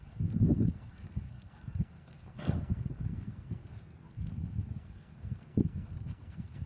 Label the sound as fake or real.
fake